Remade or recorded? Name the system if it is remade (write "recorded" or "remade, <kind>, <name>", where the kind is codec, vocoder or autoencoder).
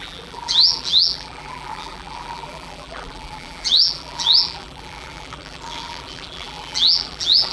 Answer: remade, vocoder, BigVGAN v2